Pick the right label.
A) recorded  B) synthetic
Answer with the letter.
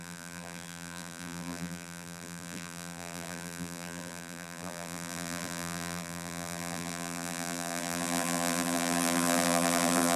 B